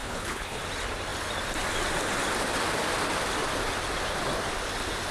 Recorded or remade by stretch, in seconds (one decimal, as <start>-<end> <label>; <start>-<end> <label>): 0.0-0.6 remade; 0.6-5.1 recorded